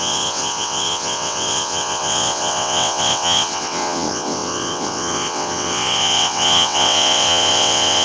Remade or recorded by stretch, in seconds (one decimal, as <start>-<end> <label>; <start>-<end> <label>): 0.0-8.0 remade